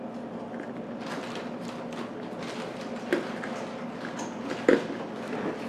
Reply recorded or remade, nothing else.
recorded